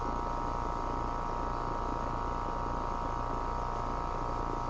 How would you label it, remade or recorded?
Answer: recorded